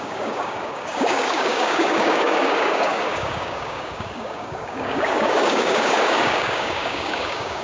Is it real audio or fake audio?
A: fake